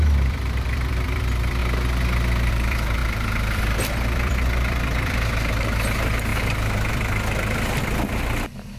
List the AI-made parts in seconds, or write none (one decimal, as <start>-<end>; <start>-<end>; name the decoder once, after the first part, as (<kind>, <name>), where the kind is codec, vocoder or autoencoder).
0.0-1.6 (vocoder, BigVGAN v2); 2.5-8.8